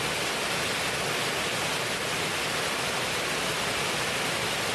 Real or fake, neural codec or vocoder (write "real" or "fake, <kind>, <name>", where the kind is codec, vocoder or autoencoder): real